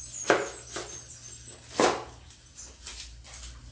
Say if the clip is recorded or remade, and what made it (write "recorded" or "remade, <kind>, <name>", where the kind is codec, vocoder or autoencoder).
recorded